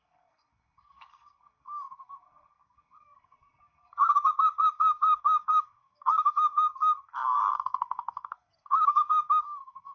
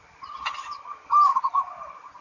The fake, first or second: first